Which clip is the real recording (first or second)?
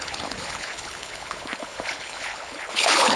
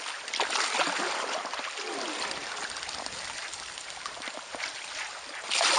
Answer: second